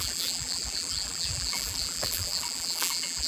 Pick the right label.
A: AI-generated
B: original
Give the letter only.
A